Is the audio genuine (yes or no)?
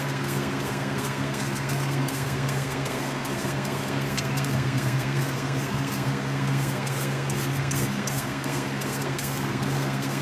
no